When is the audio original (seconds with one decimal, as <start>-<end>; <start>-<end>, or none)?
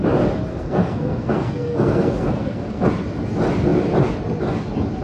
0.0-0.5; 2.9-5.0